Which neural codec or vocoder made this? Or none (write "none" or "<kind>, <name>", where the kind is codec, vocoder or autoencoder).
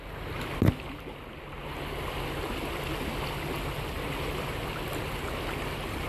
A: none